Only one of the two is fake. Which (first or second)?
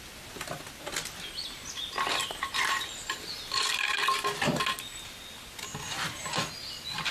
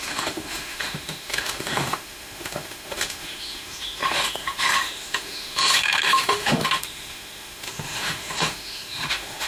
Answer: second